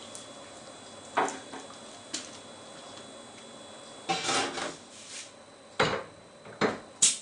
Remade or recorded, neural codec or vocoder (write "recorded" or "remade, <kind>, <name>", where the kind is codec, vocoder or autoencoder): recorded